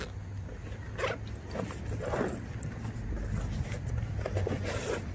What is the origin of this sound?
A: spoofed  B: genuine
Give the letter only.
B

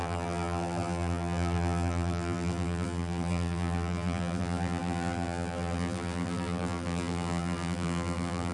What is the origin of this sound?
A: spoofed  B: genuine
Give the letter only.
A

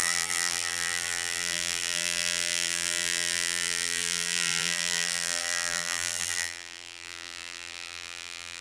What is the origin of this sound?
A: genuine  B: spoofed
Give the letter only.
B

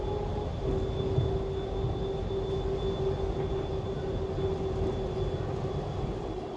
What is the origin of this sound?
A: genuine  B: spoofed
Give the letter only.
A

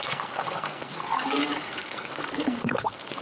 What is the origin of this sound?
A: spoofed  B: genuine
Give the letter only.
A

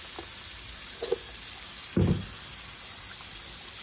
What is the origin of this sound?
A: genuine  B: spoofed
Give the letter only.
A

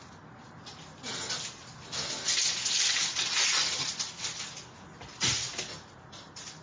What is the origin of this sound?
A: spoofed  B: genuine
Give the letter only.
B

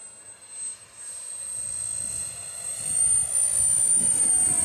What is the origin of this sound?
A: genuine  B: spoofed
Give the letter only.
A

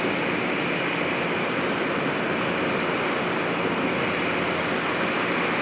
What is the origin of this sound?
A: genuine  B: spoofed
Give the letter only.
A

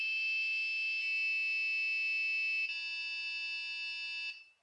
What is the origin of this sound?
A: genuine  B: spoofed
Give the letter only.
A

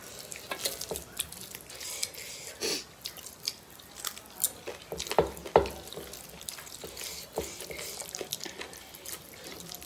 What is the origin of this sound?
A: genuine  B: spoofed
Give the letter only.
A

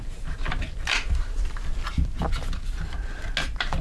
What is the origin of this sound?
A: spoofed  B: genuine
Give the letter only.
B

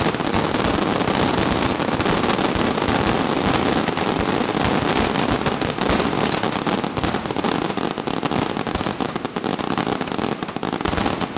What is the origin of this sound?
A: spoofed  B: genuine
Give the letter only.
B